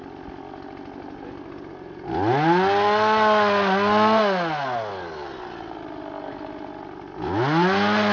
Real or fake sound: real